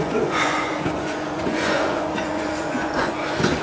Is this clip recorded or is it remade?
remade